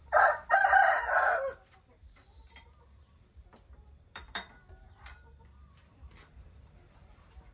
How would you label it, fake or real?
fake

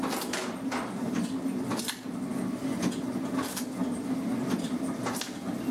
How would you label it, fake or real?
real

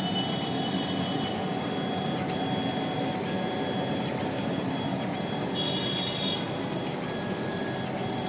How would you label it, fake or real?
real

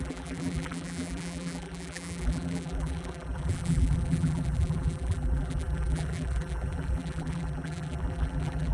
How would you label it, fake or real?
fake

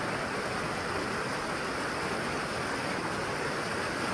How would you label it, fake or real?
real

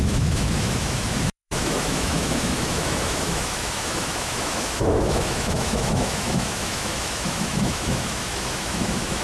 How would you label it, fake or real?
fake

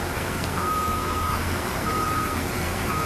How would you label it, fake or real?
fake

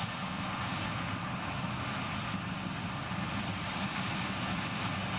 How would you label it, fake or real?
real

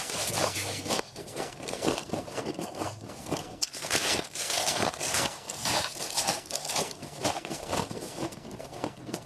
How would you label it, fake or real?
fake